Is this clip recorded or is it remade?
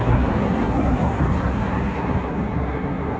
remade